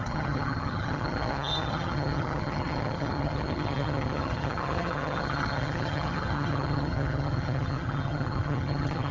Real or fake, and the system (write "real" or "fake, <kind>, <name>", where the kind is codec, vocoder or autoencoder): fake, vocoder, HiFi-GAN